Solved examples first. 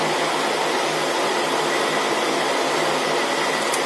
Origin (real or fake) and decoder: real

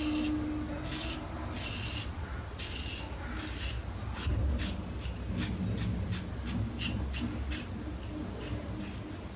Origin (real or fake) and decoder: real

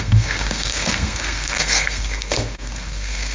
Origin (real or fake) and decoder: fake, codec, SNAC